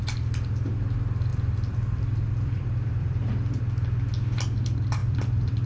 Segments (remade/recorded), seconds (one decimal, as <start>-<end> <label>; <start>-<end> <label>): 0.0-1.3 recorded; 1.3-3.6 remade; 3.6-5.0 recorded; 5.0-5.7 remade